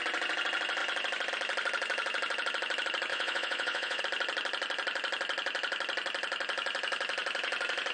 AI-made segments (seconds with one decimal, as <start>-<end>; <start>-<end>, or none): 3.1-4.0